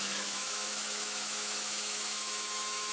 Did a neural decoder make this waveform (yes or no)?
yes